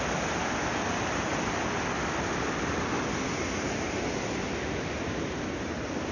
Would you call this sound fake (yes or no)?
no